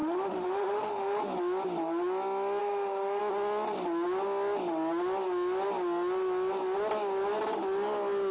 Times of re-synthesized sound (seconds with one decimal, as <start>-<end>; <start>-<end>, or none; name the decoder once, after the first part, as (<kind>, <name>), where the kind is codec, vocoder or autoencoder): 0.0-1.2 (autoencoder, DAC-VAE); 2.6-3.2